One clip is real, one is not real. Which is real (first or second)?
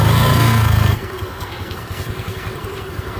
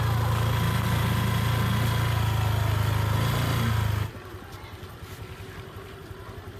second